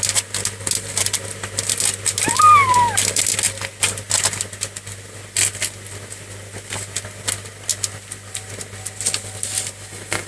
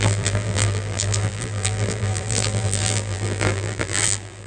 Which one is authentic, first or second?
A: first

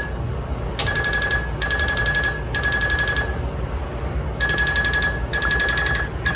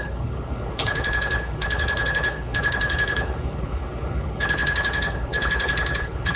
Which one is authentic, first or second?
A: first